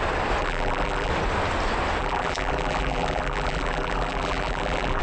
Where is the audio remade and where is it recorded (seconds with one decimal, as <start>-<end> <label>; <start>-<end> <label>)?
0.0-0.4 recorded; 0.4-1.1 remade; 1.1-2.0 recorded; 2.0-5.0 remade